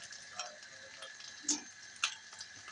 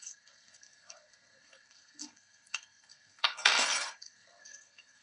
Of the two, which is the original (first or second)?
first